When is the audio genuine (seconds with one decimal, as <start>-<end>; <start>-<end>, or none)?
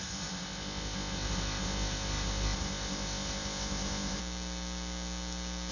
4.2-5.7